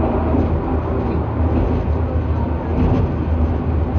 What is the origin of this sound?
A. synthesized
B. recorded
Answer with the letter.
B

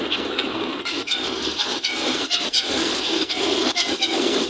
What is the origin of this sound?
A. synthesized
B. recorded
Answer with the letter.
A